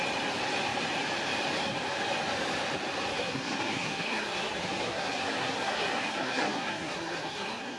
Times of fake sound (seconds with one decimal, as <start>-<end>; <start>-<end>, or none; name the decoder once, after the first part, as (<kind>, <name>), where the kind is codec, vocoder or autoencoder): 3.1-7.8 (codec, SNAC)